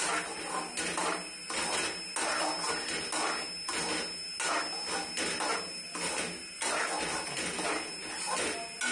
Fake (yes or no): no